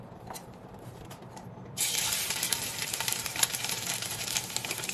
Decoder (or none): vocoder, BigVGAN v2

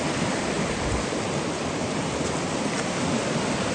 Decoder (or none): none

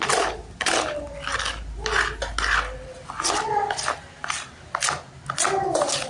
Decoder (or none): none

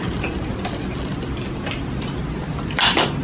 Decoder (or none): none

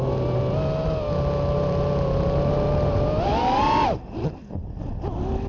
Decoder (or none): none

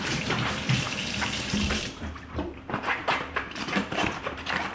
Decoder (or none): vocoder, BigVGAN v2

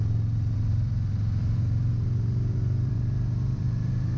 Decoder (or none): vocoder, BigVGAN v2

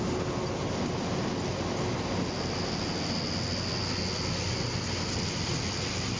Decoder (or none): none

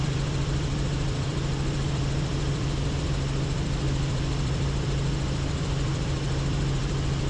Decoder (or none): vocoder, BigVGAN v2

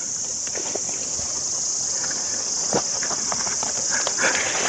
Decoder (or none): none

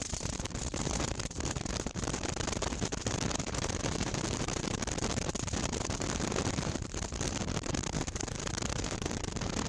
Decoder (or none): vocoder, BigVGAN v2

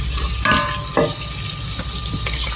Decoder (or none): none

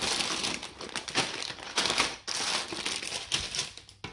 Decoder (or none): none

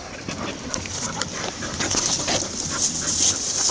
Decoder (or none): none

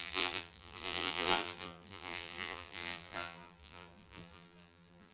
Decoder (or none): vocoder, BigVGAN v2